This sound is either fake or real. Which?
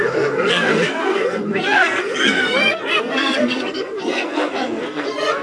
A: fake